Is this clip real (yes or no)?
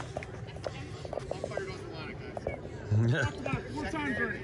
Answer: yes